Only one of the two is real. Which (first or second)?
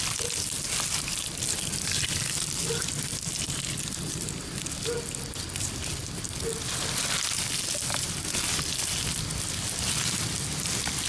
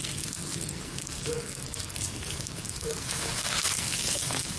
first